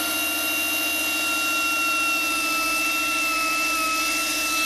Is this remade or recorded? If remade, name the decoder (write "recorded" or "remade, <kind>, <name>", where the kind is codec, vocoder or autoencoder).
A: recorded